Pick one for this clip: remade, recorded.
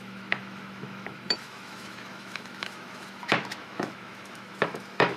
remade